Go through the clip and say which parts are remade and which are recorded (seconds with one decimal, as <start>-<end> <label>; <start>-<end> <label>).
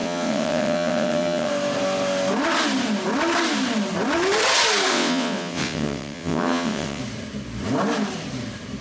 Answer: 0.0-1.5 remade; 1.5-4.9 recorded; 4.9-7.0 remade; 7.0-8.8 recorded